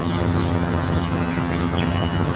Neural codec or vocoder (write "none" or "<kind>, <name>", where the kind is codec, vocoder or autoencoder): vocoder, HiFi-GAN